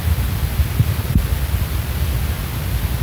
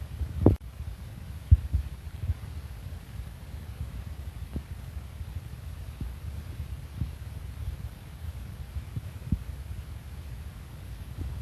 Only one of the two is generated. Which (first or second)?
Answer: second